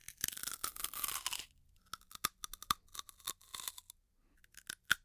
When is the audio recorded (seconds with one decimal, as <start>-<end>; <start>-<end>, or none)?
0.0-5.0